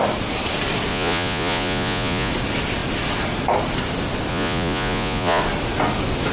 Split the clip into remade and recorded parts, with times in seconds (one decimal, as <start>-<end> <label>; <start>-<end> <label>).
0.0-0.9 recorded; 0.9-2.3 remade; 2.3-4.3 recorded; 4.3-5.4 remade; 5.4-6.3 recorded